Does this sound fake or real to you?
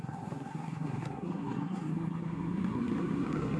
fake